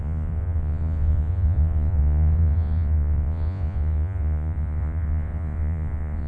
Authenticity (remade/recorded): remade